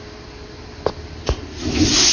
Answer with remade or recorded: recorded